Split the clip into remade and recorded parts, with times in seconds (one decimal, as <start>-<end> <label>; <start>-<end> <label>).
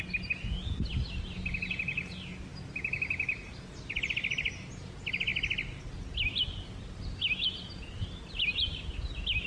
0.0-9.5 recorded